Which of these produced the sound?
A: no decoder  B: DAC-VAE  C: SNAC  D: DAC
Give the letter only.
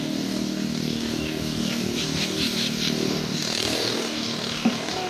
D